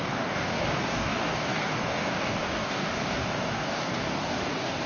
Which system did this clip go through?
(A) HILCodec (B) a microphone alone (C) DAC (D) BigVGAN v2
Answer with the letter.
C